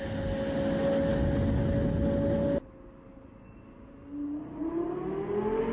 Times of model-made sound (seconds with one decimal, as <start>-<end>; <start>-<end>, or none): none